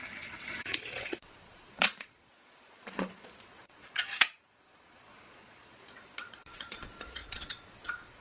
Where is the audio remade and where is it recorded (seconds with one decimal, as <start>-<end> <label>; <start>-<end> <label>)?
0.0-8.2 remade

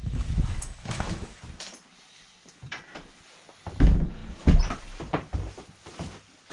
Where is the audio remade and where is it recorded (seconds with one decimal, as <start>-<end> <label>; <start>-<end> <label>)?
0.0-1.4 remade; 1.4-6.5 recorded

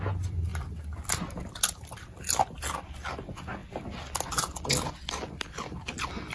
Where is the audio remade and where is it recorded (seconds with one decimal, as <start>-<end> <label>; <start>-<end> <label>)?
0.0-6.3 recorded

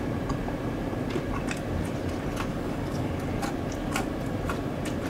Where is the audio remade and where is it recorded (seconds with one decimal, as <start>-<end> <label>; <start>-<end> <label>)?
0.0-2.5 recorded; 2.5-3.1 remade; 3.1-5.1 recorded

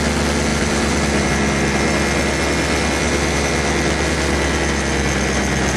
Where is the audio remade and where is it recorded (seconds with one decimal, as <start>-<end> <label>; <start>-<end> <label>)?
0.0-0.5 recorded; 0.5-1.3 remade; 1.3-3.0 recorded; 3.0-3.5 remade; 3.5-5.8 recorded

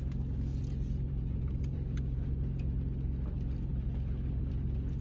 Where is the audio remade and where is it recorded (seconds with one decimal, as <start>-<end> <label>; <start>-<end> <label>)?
0.0-0.5 recorded; 0.5-2.3 remade; 2.3-5.0 recorded

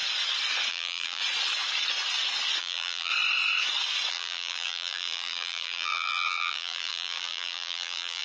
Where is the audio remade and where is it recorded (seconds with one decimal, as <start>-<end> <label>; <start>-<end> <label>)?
0.0-0.7 recorded; 0.7-1.2 remade; 1.2-2.6 recorded; 2.6-3.1 remade; 3.1-4.1 recorded; 4.1-8.2 remade